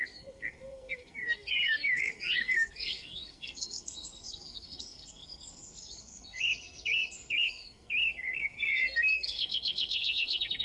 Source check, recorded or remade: remade